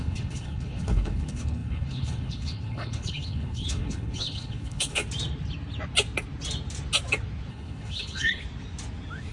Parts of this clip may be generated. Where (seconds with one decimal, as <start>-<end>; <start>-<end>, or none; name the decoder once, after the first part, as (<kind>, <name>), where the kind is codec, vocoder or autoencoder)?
0.0-5.0 (codec, HILCodec); 7.5-8.4